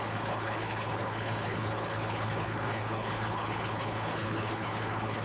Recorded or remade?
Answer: remade